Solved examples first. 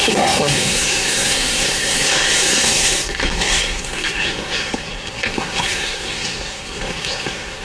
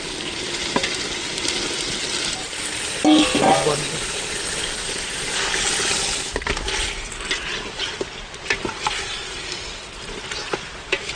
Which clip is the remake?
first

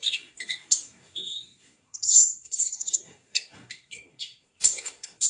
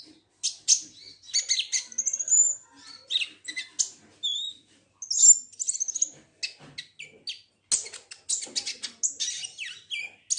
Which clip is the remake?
first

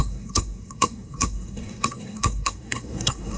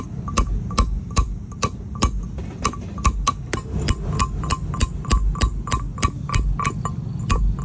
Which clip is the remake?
first